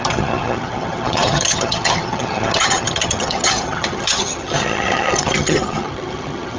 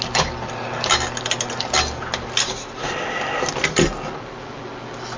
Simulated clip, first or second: first